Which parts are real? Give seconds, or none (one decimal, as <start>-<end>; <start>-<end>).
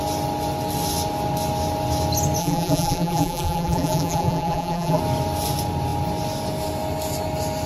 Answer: 0.0-2.4; 5.0-7.7